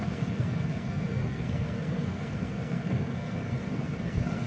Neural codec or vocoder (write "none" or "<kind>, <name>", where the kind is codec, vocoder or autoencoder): codec, SNAC